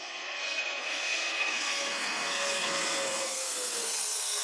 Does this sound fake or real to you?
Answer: fake